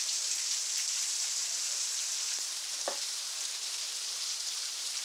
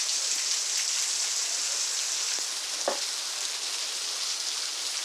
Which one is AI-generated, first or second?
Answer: first